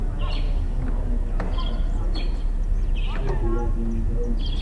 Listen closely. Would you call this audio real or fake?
real